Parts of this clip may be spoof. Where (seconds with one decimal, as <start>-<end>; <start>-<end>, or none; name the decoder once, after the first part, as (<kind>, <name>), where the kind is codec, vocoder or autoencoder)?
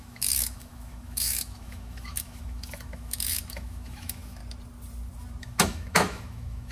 0.0-4.4 (autoencoder, DAC-VAE); 5.4-6.7